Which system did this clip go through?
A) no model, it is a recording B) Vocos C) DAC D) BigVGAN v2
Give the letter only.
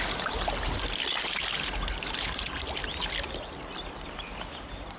A